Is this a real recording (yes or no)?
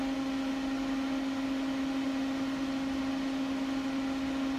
yes